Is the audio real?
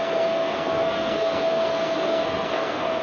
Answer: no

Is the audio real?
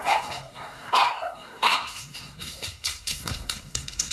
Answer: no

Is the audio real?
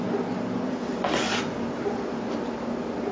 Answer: yes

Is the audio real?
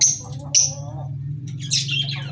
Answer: yes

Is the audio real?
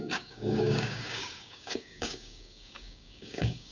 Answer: no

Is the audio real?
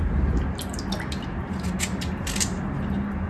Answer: yes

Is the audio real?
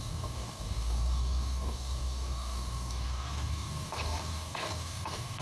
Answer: no